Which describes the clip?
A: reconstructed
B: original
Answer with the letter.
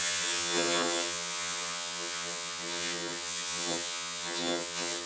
A